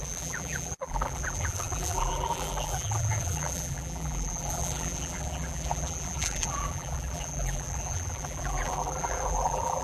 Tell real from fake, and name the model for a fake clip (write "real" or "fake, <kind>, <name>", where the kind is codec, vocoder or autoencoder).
fake, vocoder, BigVGAN v2